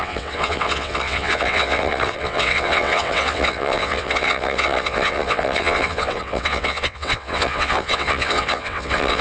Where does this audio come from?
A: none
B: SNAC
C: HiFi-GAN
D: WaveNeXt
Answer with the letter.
D